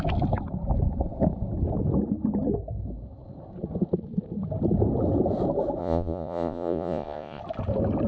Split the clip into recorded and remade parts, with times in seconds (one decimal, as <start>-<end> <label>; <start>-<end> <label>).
0.0-5.8 recorded; 5.8-7.4 remade; 7.4-8.1 recorded